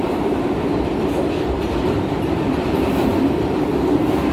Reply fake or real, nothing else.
fake